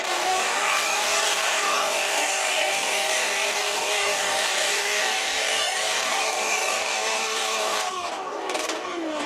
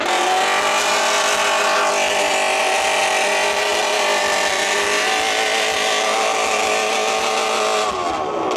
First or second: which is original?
second